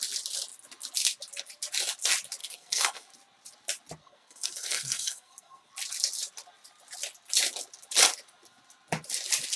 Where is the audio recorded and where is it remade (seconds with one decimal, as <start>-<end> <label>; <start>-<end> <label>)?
0.0-2.4 recorded; 2.4-3.1 remade; 3.1-4.0 recorded; 4.0-5.7 remade; 5.7-9.6 recorded